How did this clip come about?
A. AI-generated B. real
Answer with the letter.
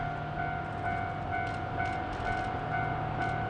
B